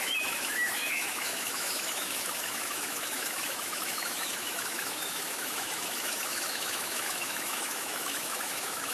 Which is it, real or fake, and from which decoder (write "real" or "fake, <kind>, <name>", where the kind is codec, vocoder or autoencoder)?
fake, autoencoder, DAC-VAE